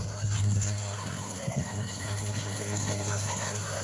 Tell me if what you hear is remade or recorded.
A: remade